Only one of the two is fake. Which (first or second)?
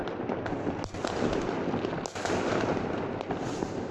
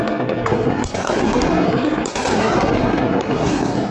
second